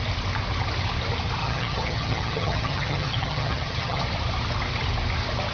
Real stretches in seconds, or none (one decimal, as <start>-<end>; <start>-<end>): 0.0-1.4; 4.0-5.5